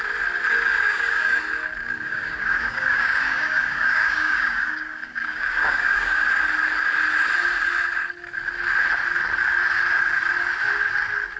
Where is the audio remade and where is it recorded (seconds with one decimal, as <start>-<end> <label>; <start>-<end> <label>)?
0.0-0.7 recorded; 0.7-1.4 remade; 1.4-1.8 recorded; 1.8-6.3 remade; 6.3-11.4 recorded